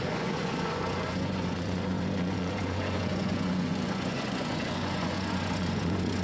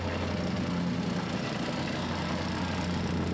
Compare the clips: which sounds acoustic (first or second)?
second